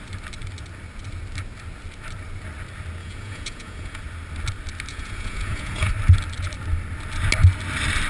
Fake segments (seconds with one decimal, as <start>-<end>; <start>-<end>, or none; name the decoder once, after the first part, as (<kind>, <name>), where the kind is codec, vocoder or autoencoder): 3.0-4.0 (vocoder, Vocos); 4.9-5.9